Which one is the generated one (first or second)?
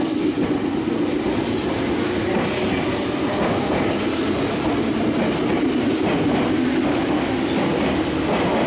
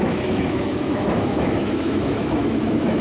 second